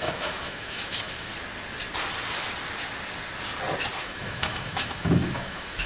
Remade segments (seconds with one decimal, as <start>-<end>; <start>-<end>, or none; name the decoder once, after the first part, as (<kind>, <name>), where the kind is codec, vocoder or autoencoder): 0.0-1.3 (autoencoder, DAC-VAE); 4.0-5.9